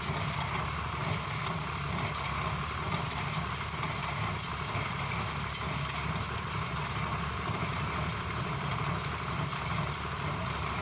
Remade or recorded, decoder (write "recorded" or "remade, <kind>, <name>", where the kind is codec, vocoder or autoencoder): recorded